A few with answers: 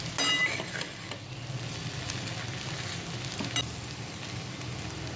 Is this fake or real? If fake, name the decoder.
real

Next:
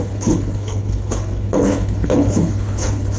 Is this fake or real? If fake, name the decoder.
fake, codec, HILCodec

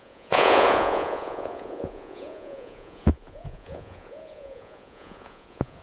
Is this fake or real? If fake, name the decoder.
fake, vocoder, Vocos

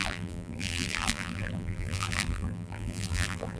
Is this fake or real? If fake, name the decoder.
fake, vocoder, BigVGAN v2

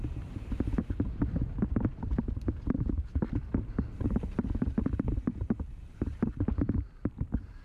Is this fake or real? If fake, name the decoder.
fake, vocoder, BigVGAN v2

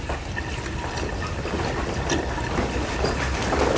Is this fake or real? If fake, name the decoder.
real